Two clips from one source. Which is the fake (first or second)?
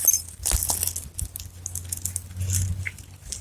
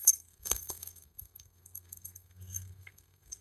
second